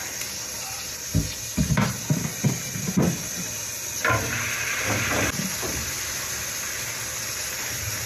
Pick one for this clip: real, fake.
real